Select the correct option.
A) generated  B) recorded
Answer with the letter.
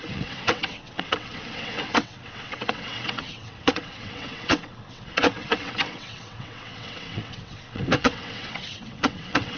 A